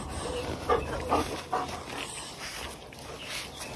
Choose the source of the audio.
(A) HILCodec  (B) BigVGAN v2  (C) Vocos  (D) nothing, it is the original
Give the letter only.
D